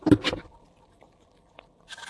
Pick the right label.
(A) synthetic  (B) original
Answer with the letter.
B